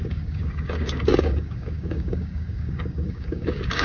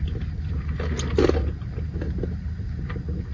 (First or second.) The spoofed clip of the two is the first